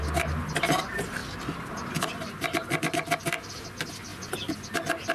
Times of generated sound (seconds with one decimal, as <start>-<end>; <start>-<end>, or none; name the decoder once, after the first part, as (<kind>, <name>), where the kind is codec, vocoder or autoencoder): none